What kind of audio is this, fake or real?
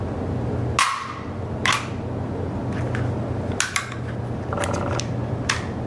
real